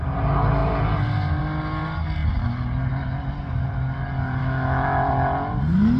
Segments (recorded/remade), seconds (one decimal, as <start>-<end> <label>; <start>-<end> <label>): 0.0-4.4 recorded; 4.4-5.1 remade; 5.1-6.0 recorded

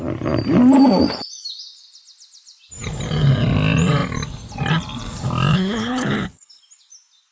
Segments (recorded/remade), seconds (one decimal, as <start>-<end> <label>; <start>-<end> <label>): 0.0-5.5 recorded; 5.5-6.6 remade; 6.6-7.3 recorded

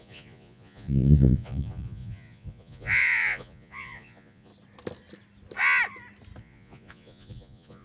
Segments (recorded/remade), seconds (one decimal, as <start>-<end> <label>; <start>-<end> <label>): 0.0-4.5 remade; 4.5-6.4 recorded; 6.4-7.8 remade